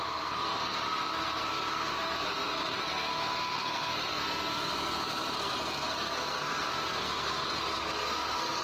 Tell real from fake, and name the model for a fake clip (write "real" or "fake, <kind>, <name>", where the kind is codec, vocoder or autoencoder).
fake, codec, SNAC